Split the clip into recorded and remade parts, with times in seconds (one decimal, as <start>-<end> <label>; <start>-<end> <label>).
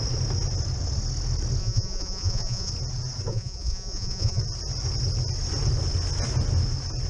0.0-1.6 recorded; 1.6-2.7 remade; 2.7-3.3 recorded; 3.3-4.4 remade; 4.4-7.1 recorded